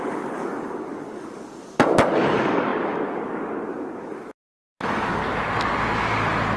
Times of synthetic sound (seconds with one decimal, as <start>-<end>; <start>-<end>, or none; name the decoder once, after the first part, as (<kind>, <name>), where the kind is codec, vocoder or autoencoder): 0.0-5.2 (codec, DAC)